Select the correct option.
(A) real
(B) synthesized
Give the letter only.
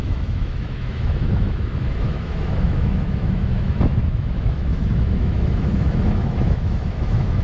B